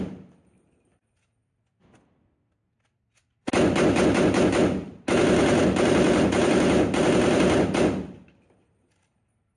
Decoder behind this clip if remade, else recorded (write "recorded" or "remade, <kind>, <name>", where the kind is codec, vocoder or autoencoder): recorded